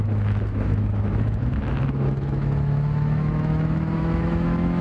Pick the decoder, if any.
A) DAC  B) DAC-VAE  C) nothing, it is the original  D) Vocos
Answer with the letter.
B